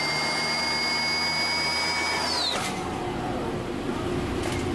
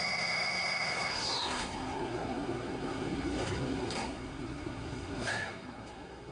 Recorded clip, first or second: first